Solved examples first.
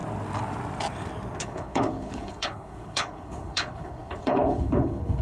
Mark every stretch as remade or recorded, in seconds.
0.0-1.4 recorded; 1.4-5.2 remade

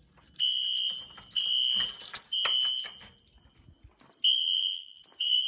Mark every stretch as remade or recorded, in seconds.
0.0-4.4 recorded; 4.4-5.0 remade; 5.0-5.5 recorded

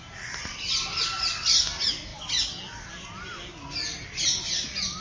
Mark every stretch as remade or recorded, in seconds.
0.0-5.0 recorded

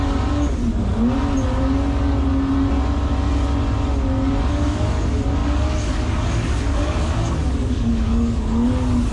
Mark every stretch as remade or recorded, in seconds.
0.0-0.6 remade; 0.6-4.5 recorded; 4.5-9.1 remade